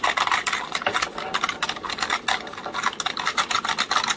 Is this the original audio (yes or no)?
yes